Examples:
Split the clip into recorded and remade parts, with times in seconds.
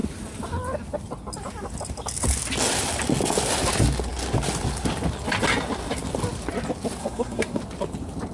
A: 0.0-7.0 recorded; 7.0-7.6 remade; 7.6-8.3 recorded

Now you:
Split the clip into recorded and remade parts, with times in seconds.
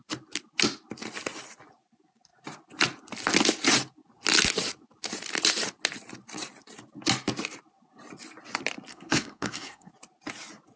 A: 0.0-8.9 recorded; 8.9-9.9 remade; 9.9-10.8 recorded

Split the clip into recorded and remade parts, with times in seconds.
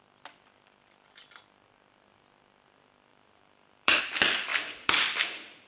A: 0.0-3.1 recorded; 3.1-4.0 remade; 4.0-4.5 recorded; 4.5-5.7 remade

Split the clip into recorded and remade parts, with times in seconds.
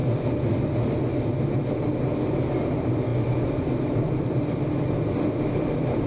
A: 0.0-6.1 recorded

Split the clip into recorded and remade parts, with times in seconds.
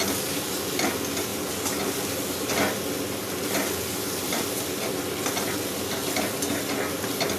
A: 0.0-1.3 recorded; 1.3-2.5 remade; 2.5-7.4 recorded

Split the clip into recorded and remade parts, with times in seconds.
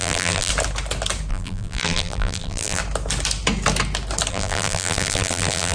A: 0.0-0.5 remade; 0.5-1.3 recorded; 1.3-2.8 remade; 2.8-4.3 recorded; 4.3-5.7 remade